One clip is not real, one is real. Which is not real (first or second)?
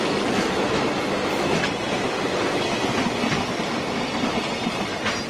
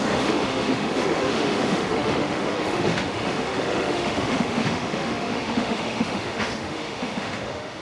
second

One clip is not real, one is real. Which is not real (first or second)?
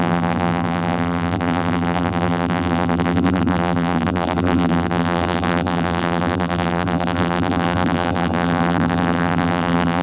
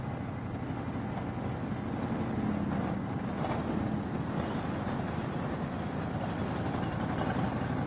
first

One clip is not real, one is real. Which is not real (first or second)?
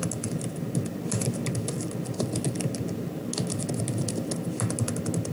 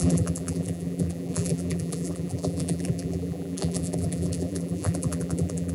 second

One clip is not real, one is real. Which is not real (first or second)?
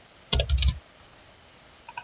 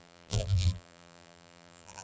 second